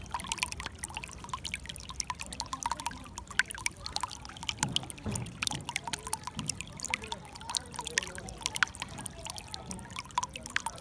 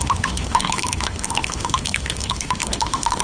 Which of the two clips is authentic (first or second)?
first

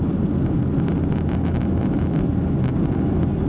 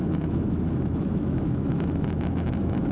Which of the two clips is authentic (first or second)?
first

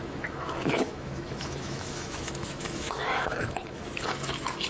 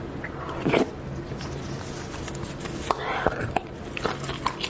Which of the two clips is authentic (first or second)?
second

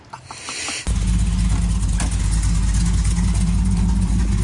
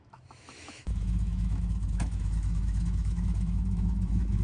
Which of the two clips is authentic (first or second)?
first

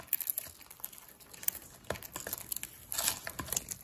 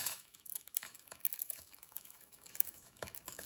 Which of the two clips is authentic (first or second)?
first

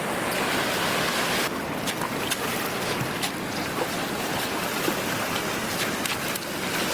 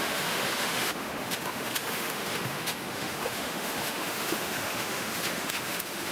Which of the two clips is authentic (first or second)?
first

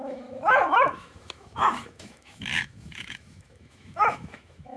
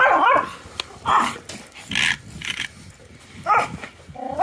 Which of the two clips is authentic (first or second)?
second